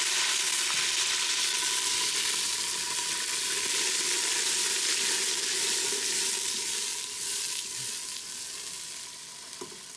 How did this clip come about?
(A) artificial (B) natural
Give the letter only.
B